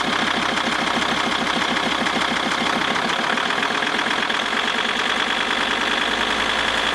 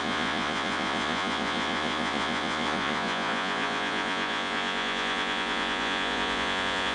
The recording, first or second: first